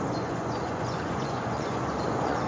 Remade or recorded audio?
remade